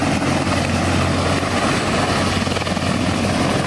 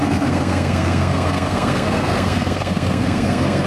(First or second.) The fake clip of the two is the second